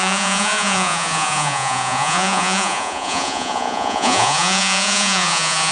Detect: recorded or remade remade